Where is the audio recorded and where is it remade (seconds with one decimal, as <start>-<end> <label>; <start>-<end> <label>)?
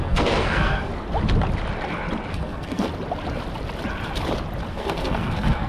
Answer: 0.0-0.9 remade; 0.9-2.3 recorded; 2.3-2.9 remade; 2.9-4.7 recorded; 4.7-5.7 remade